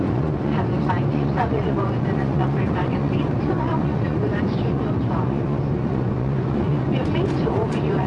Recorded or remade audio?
remade